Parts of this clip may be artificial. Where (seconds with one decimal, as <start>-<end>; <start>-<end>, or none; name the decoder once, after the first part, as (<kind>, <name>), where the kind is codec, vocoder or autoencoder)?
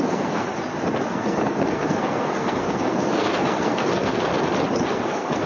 0.0-0.5 (codec, SNAC); 1.1-4.3; 4.9-5.5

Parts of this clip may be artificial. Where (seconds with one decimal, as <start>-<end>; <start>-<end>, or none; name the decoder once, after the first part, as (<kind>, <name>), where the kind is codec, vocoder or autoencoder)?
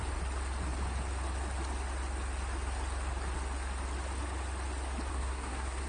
5.1-5.9 (codec, SNAC)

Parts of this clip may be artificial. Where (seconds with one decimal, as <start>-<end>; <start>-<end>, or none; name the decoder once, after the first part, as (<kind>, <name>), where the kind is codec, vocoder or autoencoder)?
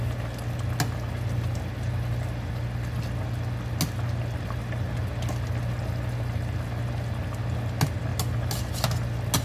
none